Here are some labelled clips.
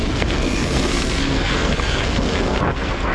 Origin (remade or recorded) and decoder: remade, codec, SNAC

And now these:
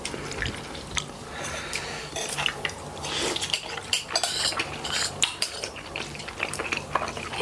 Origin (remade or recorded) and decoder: remade, vocoder, BigVGAN v2